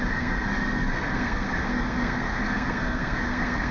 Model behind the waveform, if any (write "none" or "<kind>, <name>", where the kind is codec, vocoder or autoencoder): codec, SNAC